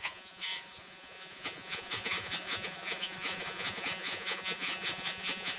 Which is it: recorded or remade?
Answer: remade